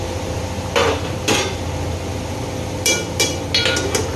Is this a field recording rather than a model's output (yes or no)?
yes